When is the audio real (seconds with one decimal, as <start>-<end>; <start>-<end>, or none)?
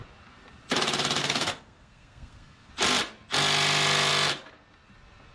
0.0-1.2; 2.7-5.3